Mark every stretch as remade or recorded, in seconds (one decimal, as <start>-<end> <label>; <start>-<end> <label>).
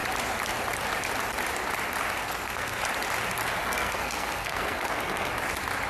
0.0-2.2 recorded; 2.2-2.8 remade; 2.8-3.6 recorded; 3.6-5.3 remade; 5.3-5.9 recorded